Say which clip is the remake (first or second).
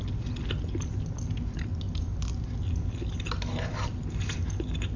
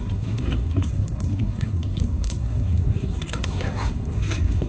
second